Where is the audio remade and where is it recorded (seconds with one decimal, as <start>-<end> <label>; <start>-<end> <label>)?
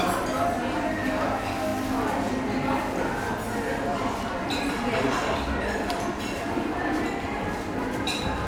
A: 0.0-1.7 recorded; 1.7-2.3 remade; 2.3-3.9 recorded; 3.9-8.5 remade